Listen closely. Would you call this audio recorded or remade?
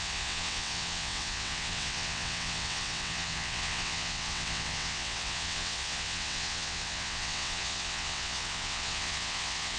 remade